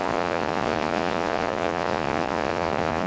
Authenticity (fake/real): fake